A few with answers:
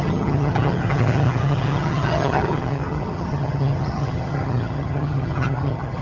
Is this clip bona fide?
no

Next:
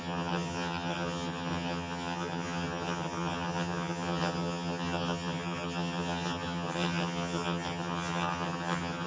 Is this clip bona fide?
no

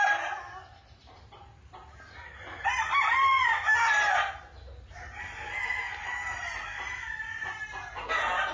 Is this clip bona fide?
yes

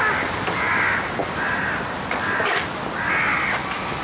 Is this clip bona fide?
yes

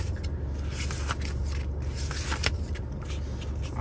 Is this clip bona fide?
yes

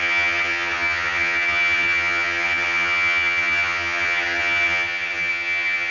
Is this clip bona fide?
no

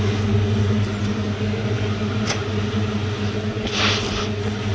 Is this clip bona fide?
yes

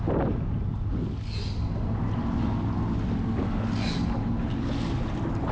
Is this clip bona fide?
yes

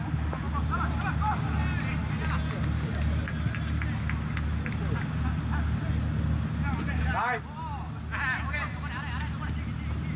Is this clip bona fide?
yes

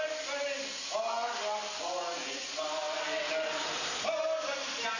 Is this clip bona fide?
yes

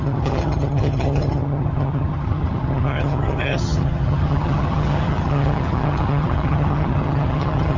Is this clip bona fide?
no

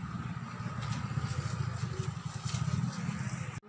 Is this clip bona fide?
yes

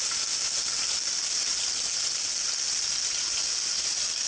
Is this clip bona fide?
yes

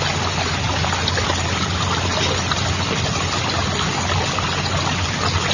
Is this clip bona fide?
yes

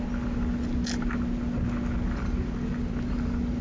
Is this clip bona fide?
yes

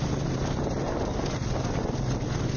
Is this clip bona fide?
yes